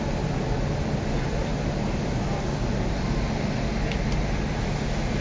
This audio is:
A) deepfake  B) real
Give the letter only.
B